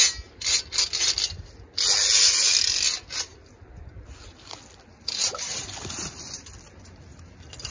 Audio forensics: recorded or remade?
recorded